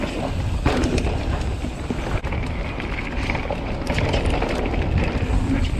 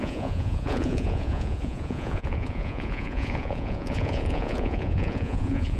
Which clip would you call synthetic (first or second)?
second